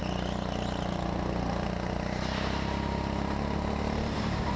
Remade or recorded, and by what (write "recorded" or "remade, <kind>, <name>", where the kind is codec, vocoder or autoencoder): recorded